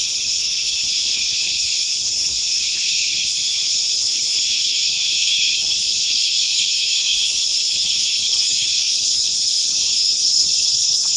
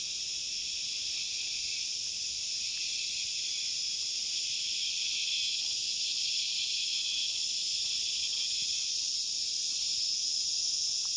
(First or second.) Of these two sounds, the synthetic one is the first